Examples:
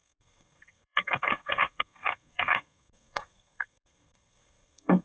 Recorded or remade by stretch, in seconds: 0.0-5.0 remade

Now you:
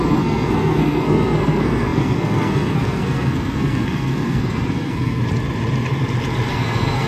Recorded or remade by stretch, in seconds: 0.0-5.2 remade; 5.2-6.5 recorded; 6.5-7.1 remade

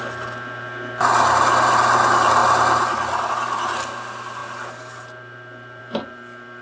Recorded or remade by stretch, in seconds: 0.0-6.6 recorded

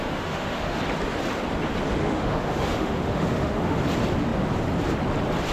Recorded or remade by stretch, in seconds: 0.0-0.8 remade; 0.8-2.0 recorded; 2.0-3.8 remade; 3.8-5.5 recorded

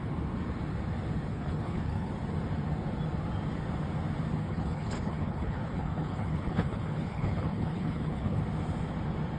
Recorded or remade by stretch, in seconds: 0.0-1.3 recorded; 1.3-2.1 remade; 2.1-4.4 recorded; 4.4-8.4 remade; 8.4-9.4 recorded

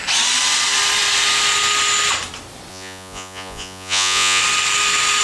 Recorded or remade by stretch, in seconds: 0.0-2.7 recorded; 2.7-4.4 remade; 4.4-5.2 recorded

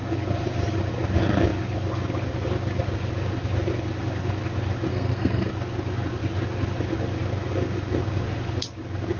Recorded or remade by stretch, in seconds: 0.0-4.9 recorded; 4.9-5.5 remade; 5.5-9.2 recorded

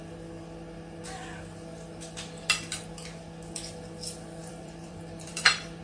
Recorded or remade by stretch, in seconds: 0.0-4.4 recorded; 4.4-5.8 remade